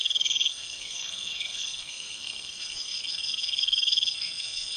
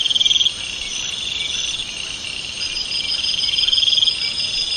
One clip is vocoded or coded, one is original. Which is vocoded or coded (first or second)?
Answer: first